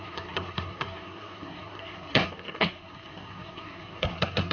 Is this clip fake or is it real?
fake